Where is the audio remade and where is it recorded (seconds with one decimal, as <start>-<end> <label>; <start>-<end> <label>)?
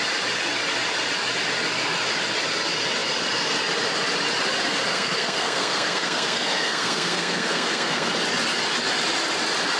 0.0-4.9 recorded; 4.9-8.1 remade; 8.1-9.8 recorded